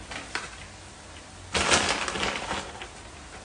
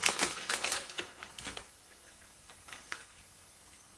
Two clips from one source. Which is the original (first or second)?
first